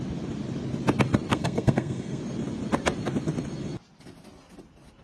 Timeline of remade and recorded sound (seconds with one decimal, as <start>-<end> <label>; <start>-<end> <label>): 0.0-1.3 recorded; 1.3-2.2 remade; 2.2-5.0 recorded